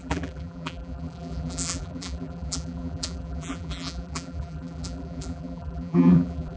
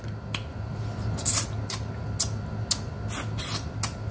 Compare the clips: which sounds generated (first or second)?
first